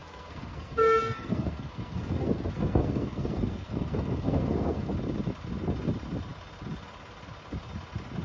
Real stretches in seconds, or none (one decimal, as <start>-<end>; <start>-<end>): 4.9-8.2

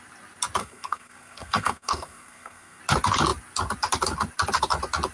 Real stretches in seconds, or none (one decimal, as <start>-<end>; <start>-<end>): 0.0-0.6; 2.8-5.1

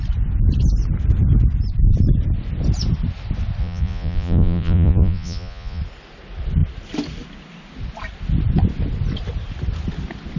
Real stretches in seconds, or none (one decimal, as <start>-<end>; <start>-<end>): 0.0-3.6; 5.8-10.4